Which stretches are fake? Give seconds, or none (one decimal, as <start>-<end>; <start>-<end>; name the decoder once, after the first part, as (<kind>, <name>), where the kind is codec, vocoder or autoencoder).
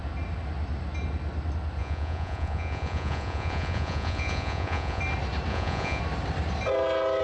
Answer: 1.8-5.0 (vocoder, Vocos); 5.5-6.0